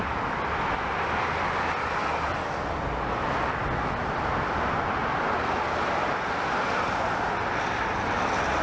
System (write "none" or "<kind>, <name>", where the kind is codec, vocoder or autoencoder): none